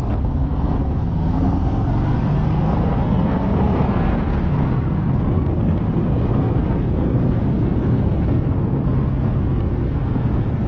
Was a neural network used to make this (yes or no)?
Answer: yes